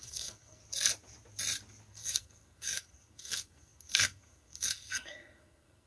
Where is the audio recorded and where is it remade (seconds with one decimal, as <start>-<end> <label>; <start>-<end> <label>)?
0.0-0.6 remade; 0.6-1.9 recorded; 1.9-5.9 remade